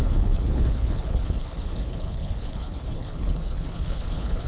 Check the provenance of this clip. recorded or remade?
remade